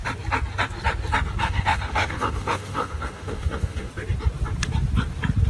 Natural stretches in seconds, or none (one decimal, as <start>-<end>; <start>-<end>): 0.0-1.4; 3.9-5.5